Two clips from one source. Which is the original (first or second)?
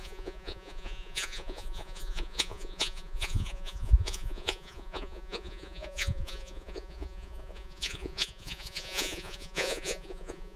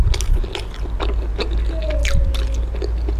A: second